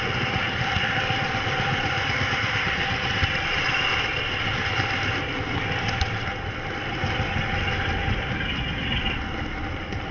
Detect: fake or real real